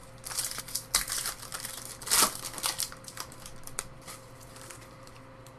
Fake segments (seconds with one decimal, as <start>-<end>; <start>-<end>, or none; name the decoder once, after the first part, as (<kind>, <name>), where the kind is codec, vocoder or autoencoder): none